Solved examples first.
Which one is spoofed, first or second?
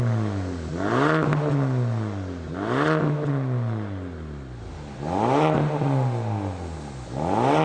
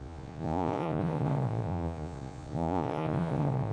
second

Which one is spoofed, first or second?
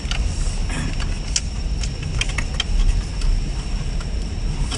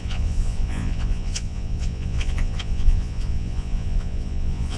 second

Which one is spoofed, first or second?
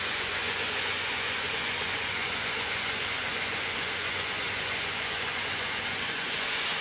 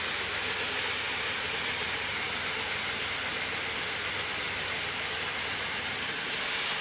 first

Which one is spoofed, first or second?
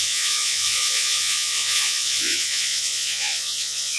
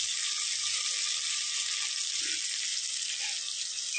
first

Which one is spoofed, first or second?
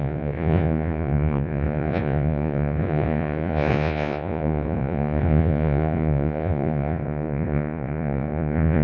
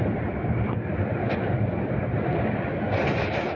first